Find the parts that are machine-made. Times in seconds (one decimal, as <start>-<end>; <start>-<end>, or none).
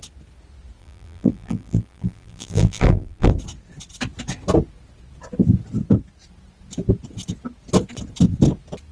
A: 0.8-3.3